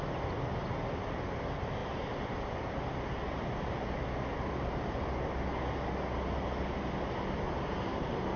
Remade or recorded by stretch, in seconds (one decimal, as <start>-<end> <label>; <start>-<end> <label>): 0.0-8.4 recorded